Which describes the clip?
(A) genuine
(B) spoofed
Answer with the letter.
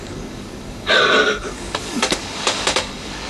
B